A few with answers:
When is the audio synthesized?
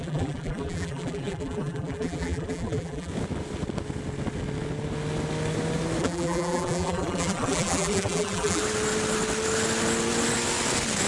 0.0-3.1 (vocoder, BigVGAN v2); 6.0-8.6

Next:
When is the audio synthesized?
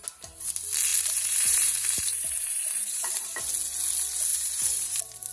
0.9-3.4 (vocoder, BigVGAN v2); 4.3-5.3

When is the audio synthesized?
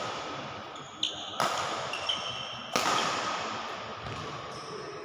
none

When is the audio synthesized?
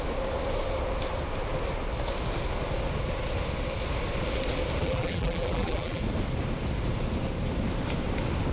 4.8-6.0 (vocoder, BigVGAN v2)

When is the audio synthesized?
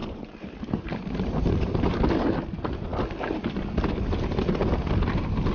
0.0-2.0 (vocoder, BigVGAN v2)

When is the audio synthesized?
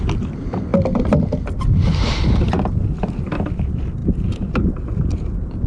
0.0-0.7 (vocoder, BigVGAN v2); 1.6-5.7